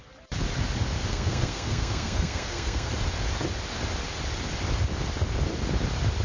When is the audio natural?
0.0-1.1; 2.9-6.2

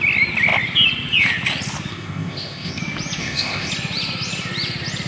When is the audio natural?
0.0-1.9; 2.8-3.2; 3.7-5.1

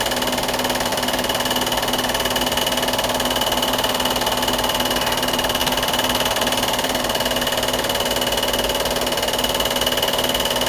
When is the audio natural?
0.0-5.6; 7.0-10.7